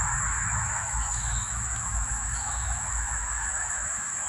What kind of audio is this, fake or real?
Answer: fake